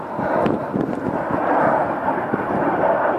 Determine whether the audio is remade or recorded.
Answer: recorded